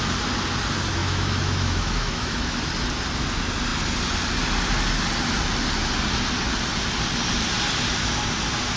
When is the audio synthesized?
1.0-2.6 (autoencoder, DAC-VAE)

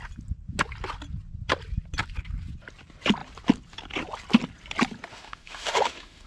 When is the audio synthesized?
5.1-6.3 (autoencoder, DAC-VAE)